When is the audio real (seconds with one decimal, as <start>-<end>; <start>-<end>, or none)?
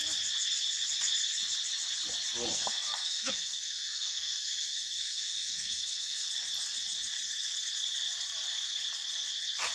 0.0-2.5; 6.3-9.7